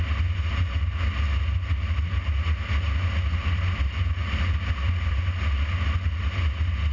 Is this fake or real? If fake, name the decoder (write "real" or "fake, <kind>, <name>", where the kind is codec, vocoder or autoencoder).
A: real